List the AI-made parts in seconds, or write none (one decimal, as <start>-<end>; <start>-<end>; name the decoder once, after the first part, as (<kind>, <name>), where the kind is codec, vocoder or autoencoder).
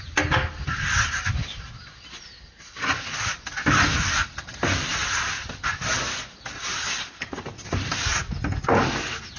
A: none